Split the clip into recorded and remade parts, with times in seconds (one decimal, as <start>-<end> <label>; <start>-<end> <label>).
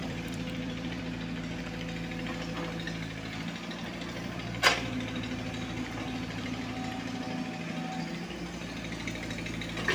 0.0-1.0 remade; 1.0-9.9 recorded